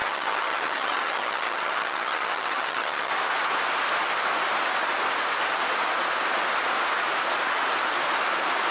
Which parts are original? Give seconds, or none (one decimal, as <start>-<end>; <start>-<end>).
3.1-8.7